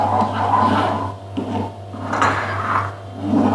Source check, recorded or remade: recorded